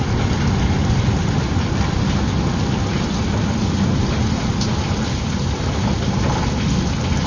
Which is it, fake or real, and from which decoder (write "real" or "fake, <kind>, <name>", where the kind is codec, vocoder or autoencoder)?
real